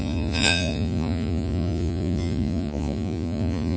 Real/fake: fake